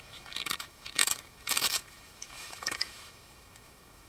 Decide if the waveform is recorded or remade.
remade